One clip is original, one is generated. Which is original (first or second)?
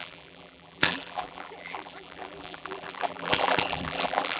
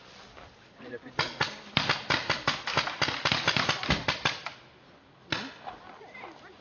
second